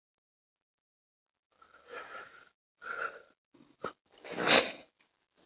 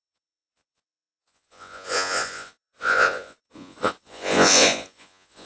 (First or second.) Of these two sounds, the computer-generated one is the second